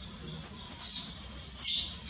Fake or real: real